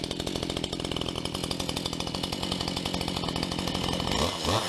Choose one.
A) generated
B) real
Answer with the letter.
B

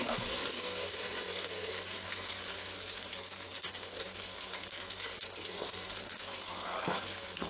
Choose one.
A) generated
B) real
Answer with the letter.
A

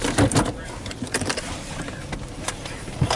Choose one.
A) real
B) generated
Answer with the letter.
B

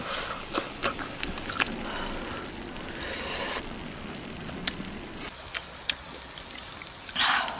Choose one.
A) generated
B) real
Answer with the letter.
B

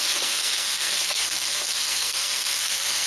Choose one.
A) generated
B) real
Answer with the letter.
A